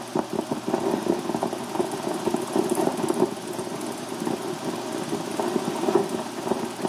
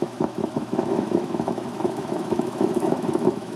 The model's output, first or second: second